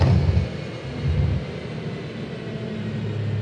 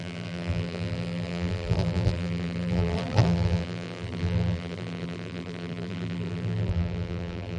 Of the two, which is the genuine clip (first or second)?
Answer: first